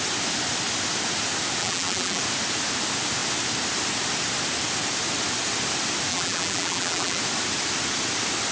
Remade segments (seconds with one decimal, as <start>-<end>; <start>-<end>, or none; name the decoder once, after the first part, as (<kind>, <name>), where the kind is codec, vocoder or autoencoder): 1.6-2.2 (vocoder, BigVGAN v2); 6.1-7.2